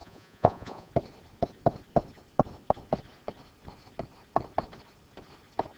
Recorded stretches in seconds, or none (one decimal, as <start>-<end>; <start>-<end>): 0.9-5.8